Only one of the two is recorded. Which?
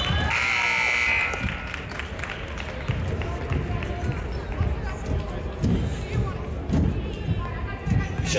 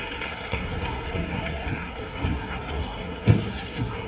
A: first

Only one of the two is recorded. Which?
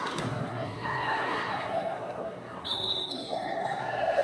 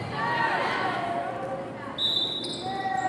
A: second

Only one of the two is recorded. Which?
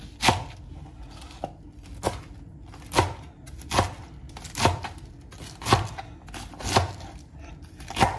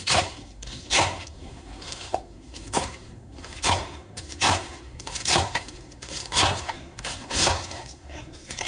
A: first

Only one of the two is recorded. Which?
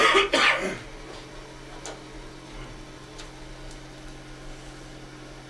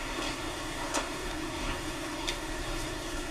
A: first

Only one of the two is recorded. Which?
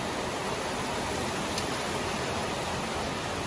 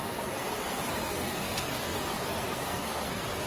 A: first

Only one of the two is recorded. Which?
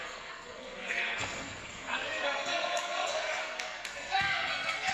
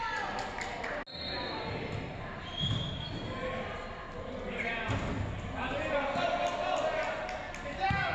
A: second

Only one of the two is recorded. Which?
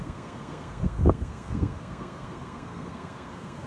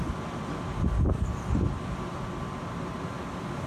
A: second